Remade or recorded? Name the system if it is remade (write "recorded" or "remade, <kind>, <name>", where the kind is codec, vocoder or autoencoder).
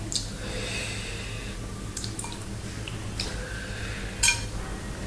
recorded